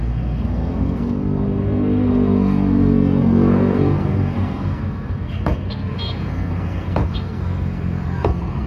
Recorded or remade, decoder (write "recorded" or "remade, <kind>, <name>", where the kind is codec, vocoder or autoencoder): remade, codec, SNAC